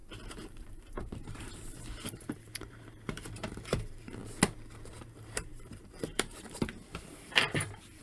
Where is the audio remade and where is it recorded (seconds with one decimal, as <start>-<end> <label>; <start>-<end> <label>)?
0.0-0.6 recorded; 0.6-4.2 remade; 4.2-4.9 recorded; 4.9-8.0 remade